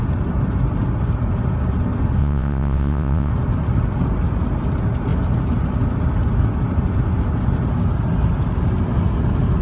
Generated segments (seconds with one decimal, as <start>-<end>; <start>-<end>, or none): 2.2-3.3